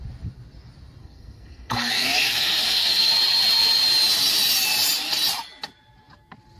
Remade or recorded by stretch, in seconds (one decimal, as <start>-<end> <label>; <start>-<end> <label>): 0.0-1.0 recorded; 1.0-3.1 remade; 3.1-6.6 recorded